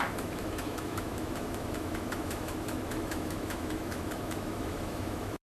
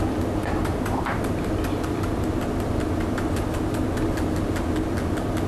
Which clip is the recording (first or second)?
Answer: second